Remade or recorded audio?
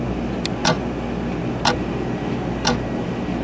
recorded